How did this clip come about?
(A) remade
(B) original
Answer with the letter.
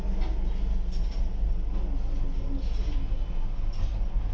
B